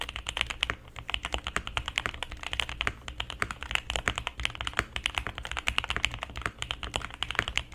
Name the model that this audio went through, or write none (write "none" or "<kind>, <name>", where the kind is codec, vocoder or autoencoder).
none